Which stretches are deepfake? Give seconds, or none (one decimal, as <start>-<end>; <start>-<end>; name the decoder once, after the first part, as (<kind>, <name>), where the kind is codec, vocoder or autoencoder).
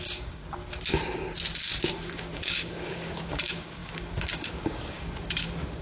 0.0-0.4 (codec, DAC); 1.9-5.8